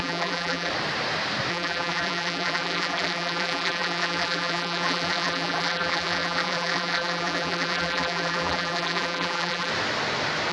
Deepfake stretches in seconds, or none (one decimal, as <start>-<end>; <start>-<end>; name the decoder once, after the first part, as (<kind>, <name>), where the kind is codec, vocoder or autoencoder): 0.0-0.7 (vocoder, BigVGAN v2); 1.5-9.7